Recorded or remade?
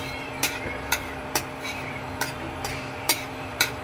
remade